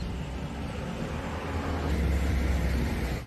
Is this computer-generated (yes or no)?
no